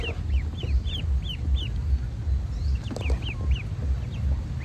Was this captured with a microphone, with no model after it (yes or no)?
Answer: yes